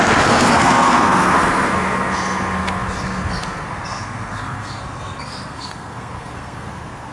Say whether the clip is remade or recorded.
remade